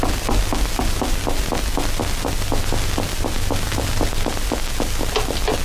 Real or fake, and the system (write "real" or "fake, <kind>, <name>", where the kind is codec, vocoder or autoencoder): real